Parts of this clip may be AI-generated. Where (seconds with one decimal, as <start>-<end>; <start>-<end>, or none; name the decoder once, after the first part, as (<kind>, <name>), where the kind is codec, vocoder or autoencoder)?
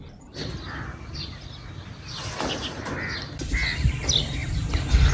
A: none